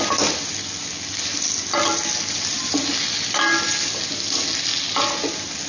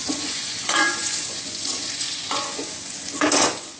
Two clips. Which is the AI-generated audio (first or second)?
second